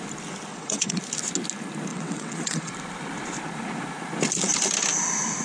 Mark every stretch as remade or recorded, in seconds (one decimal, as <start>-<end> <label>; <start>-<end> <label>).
0.0-0.5 recorded; 0.5-1.0 remade; 1.0-1.9 recorded; 1.9-2.7 remade; 2.7-5.4 recorded